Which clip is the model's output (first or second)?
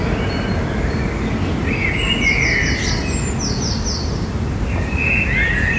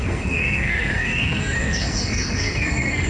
second